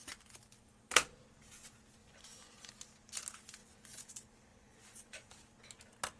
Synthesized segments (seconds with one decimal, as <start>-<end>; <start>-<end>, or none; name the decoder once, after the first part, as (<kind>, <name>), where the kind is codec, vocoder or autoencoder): 2.0-2.7 (vocoder, Vocos); 3.6-4.1; 4.5-5.3